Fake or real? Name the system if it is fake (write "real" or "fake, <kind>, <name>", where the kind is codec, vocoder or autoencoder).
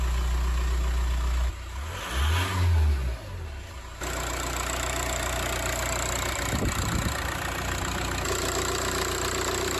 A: real